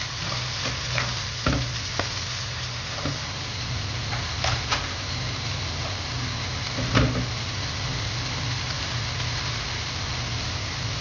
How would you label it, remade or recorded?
recorded